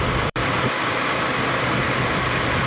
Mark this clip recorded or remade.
remade